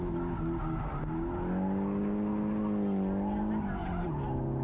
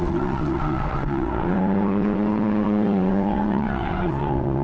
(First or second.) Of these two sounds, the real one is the first